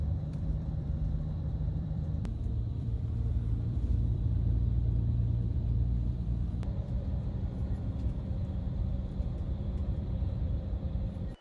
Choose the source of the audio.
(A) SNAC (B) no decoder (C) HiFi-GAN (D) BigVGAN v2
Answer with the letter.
D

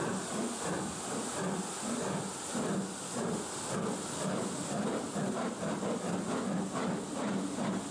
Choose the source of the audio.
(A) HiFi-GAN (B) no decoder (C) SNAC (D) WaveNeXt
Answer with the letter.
B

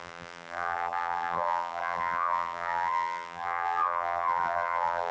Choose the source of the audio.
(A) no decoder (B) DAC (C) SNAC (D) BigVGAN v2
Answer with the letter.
D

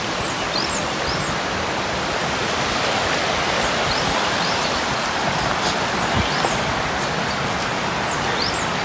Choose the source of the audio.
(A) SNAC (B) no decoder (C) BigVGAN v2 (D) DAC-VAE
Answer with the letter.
B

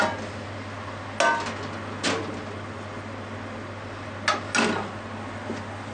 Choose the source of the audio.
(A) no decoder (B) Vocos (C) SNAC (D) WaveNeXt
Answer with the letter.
A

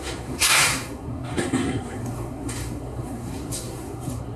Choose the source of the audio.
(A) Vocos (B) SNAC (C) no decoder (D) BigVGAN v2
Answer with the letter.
B